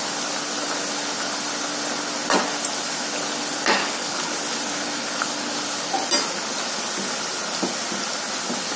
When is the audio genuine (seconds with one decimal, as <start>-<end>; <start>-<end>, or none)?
0.0-3.8; 4.3-8.8